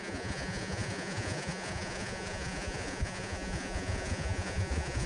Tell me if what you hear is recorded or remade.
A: remade